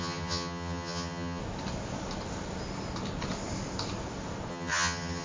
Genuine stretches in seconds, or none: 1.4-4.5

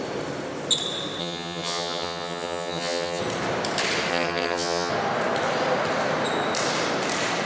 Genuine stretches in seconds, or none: 0.0-1.2; 3.2-4.1; 4.9-7.5